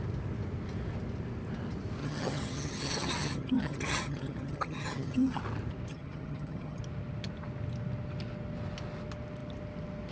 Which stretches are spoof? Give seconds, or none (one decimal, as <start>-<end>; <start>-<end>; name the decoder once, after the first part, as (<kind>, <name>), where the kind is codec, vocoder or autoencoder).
2.0-5.4 (vocoder, HiFi-GAN); 5.9-6.8